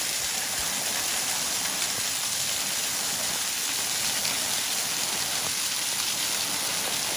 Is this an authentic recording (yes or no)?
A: yes